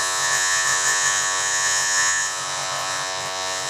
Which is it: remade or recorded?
remade